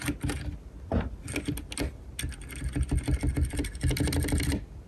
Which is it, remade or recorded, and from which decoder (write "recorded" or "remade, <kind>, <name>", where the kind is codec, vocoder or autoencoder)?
recorded